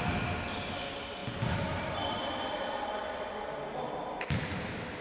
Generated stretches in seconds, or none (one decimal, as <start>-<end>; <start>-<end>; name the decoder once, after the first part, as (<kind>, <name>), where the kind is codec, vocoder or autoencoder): none